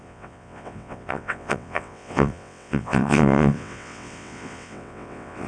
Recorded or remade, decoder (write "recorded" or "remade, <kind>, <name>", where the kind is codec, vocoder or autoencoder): remade, vocoder, WaveNeXt